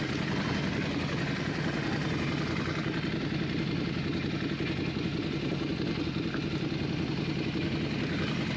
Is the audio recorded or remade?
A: recorded